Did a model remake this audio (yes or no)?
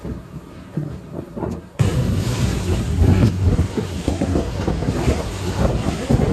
yes